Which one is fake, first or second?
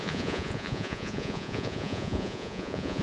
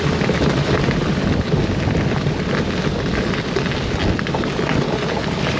first